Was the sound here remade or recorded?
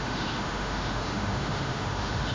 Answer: remade